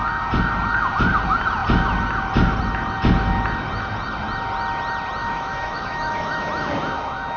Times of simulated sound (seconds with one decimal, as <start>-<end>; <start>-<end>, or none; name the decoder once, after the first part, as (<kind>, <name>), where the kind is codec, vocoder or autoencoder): 5.2-6.5 (autoencoder, DAC-VAE)